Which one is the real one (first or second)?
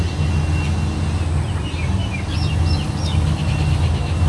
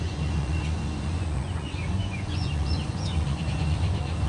first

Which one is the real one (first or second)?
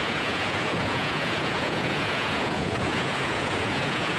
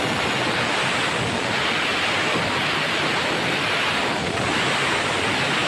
second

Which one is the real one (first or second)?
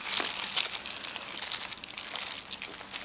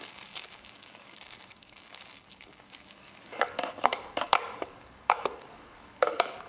first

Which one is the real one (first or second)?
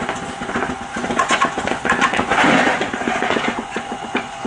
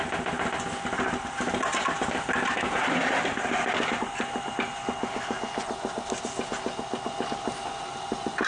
second